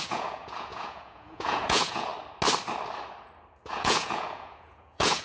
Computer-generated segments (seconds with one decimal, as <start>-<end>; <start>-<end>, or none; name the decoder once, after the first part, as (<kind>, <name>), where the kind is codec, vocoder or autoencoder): 0.0-2.1 (vocoder, Vocos); 3.7-5.2